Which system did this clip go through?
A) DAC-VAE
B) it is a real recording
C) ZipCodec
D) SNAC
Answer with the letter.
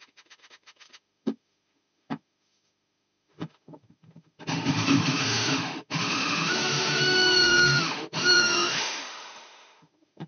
A